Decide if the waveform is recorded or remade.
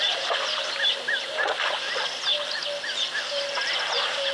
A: recorded